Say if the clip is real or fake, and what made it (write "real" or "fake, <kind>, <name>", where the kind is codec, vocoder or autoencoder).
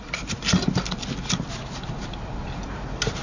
real